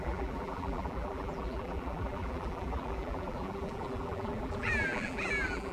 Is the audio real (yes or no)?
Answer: no